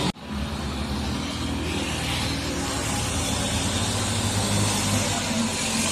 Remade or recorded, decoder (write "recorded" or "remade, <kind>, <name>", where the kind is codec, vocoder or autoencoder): recorded